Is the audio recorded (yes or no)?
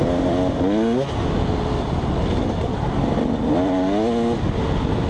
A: yes